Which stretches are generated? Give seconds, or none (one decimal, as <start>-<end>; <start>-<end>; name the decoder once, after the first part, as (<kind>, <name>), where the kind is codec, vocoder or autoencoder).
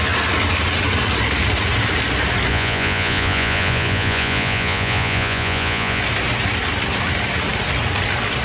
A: 2.5-6.0 (vocoder, Vocos)